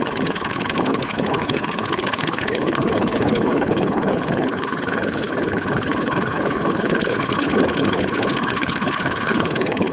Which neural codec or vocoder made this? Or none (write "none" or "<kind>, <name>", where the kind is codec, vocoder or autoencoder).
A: codec, HILCodec